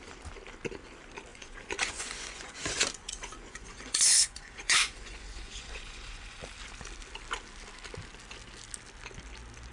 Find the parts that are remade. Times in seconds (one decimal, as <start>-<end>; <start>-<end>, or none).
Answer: 1.3-6.4